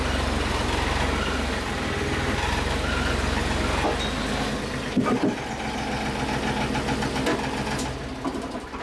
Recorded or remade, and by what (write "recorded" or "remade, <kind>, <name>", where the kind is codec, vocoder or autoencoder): recorded